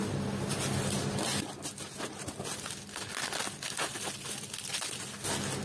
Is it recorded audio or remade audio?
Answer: recorded